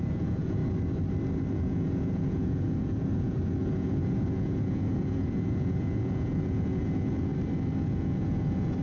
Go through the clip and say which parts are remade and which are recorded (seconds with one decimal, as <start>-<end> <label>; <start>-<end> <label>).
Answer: 0.0-0.6 remade; 0.6-1.5 recorded; 1.5-7.3 remade; 7.3-7.8 recorded; 7.8-8.8 remade